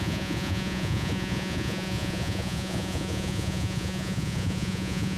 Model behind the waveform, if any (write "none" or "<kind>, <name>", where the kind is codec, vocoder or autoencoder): vocoder, Vocos